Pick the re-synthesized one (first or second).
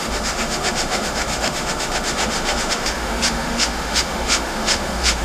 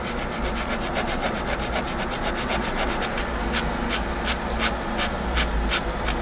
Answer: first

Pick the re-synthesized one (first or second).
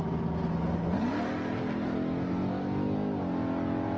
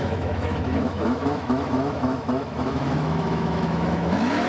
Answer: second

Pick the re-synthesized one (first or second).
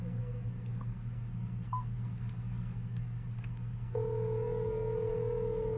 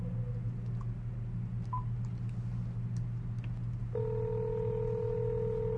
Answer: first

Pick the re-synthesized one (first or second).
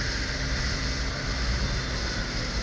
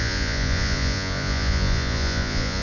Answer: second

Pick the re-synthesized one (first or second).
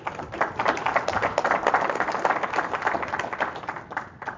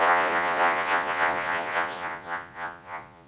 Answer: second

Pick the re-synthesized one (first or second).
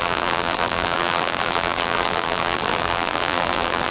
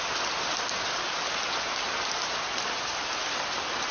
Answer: first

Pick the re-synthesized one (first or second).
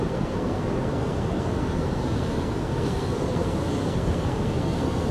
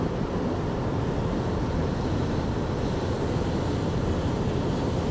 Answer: first